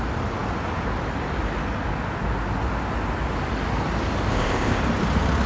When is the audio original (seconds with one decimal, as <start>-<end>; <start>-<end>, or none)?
0.0-4.3; 4.8-5.5

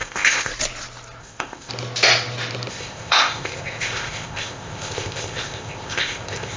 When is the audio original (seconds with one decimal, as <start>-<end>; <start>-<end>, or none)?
0.5-1.2; 1.7-2.7

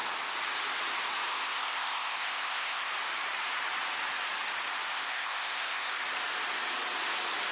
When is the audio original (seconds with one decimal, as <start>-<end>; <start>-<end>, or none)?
0.0-1.3; 2.9-4.9; 6.0-7.5

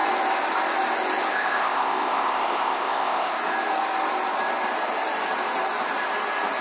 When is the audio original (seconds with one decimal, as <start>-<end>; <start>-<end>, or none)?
0.0-1.3; 3.3-6.6

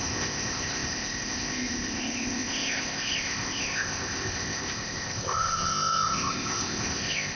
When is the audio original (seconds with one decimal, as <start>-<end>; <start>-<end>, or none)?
none

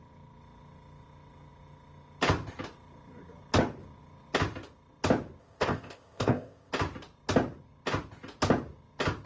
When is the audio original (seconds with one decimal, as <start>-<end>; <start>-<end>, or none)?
0.0-5.4; 6.7-9.3